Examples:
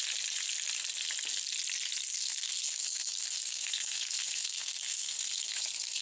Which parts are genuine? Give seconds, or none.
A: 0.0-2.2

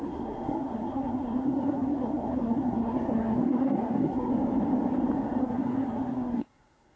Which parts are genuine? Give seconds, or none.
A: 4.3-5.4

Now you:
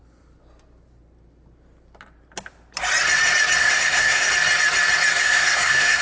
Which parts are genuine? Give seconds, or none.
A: 0.0-3.6; 4.3-5.1

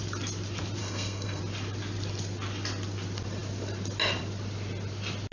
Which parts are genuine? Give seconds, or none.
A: 0.0-0.8; 1.4-5.3

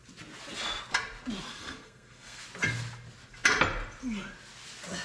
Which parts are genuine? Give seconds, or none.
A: 0.0-1.5; 2.4-5.0